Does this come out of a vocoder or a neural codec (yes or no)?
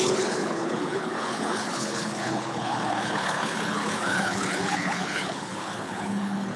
yes